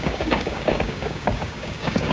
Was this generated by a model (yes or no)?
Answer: yes